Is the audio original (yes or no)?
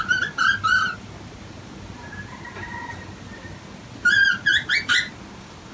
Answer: yes